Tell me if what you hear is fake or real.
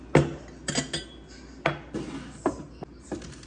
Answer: real